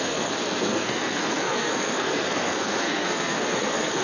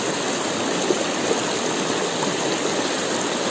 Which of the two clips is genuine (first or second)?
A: second